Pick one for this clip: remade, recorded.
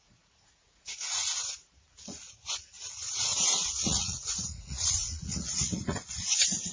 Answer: remade